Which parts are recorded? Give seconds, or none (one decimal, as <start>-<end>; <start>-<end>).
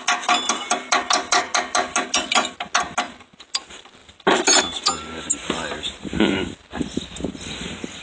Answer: 0.0-8.0